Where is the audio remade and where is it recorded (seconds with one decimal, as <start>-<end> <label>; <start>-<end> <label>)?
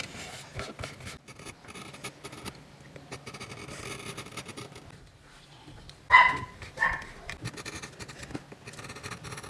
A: 0.0-9.5 recorded